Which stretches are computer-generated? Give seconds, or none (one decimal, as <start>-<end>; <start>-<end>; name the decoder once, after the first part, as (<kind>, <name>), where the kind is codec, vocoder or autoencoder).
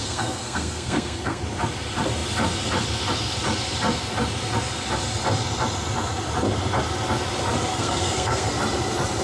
0.0-1.4 (codec, SNAC); 7.7-8.5